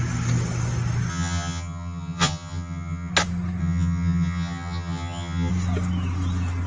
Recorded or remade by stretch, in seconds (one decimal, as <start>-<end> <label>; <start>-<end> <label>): 0.0-1.1 recorded; 1.1-3.1 remade; 3.1-3.6 recorded; 3.6-5.5 remade; 5.5-6.7 recorded